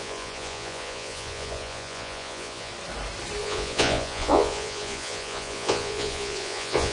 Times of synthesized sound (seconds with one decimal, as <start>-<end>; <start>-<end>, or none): 0.0-2.7; 3.4-6.9